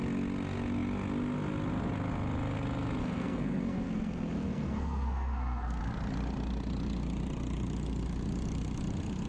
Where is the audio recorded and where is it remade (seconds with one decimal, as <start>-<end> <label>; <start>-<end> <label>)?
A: 0.0-3.0 recorded; 3.0-5.8 remade; 5.8-9.3 recorded